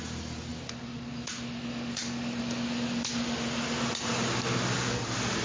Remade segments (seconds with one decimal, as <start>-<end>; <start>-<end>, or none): none